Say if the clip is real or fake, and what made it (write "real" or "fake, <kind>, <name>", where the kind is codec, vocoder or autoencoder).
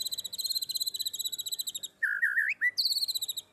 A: real